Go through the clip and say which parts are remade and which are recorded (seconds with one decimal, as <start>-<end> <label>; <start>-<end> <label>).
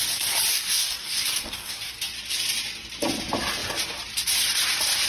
0.0-0.5 recorded; 0.5-2.0 remade; 2.0-5.1 recorded